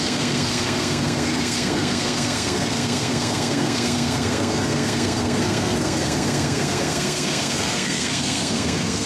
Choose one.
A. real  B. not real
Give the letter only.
B